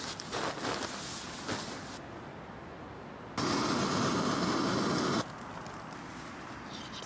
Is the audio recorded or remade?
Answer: recorded